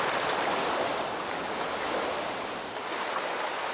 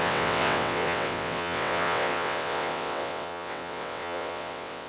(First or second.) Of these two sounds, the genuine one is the first